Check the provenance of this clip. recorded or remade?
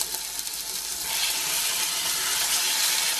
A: recorded